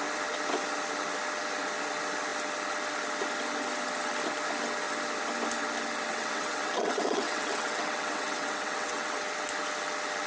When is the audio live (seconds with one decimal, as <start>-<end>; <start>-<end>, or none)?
0.0-6.1; 9.2-10.3